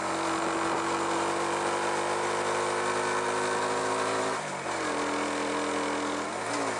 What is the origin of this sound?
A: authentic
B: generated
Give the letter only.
A